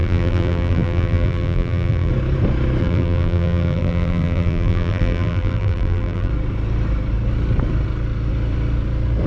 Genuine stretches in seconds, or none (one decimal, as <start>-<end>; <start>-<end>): 2.1-2.8; 6.3-9.3